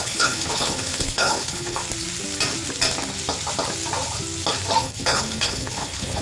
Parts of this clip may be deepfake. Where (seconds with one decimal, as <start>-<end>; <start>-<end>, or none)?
0.0-1.8; 4.8-6.2